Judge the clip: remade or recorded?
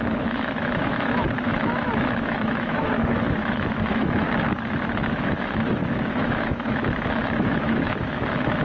remade